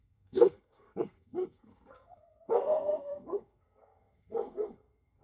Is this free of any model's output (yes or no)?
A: no